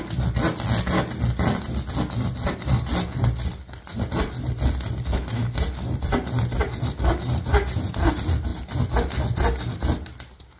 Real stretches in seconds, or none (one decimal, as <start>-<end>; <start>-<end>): 0.0-10.6